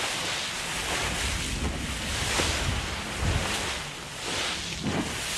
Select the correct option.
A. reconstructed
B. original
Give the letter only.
B